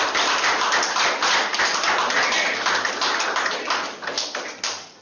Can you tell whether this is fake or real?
real